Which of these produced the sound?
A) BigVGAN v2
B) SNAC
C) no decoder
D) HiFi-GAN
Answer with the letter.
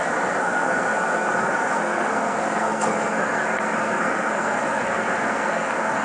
B